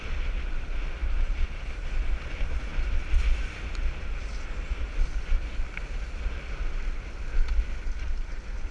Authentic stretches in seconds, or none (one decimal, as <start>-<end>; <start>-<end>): 0.0-8.7